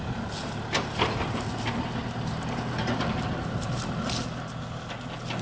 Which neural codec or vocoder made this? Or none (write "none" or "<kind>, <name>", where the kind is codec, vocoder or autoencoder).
none